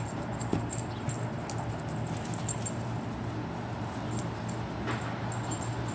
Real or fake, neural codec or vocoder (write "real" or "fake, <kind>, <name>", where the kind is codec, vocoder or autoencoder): real